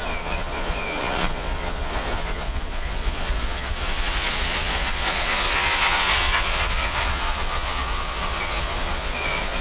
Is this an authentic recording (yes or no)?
no